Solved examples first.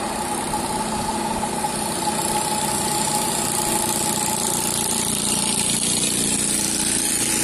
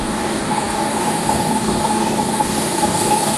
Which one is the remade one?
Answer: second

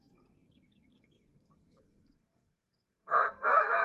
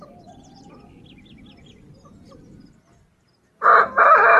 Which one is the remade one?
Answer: first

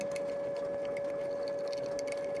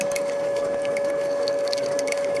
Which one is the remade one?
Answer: second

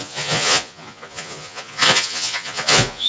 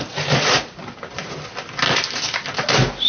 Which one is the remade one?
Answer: first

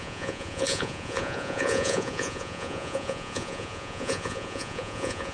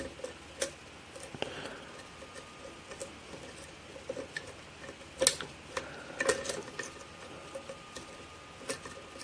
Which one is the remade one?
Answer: first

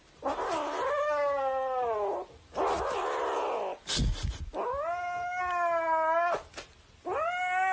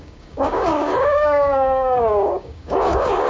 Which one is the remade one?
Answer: second